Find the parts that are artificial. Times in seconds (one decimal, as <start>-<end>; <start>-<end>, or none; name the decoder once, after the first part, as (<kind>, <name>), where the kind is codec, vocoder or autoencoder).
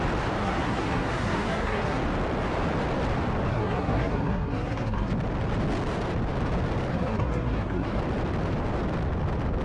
0.4-2.0 (codec, SNAC); 3.5-5.1; 6.9-8.0